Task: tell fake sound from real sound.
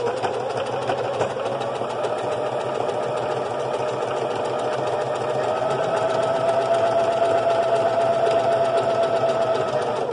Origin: real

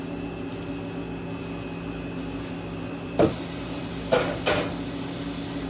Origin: real